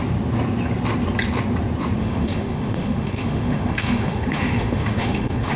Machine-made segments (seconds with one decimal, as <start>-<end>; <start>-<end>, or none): 2.0-5.6